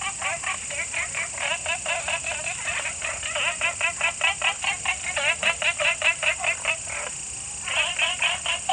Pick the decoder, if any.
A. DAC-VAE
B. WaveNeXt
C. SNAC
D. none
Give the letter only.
D